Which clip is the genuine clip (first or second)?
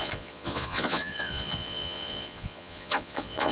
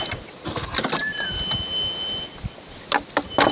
second